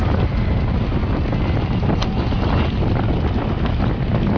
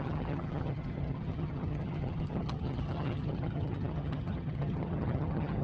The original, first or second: first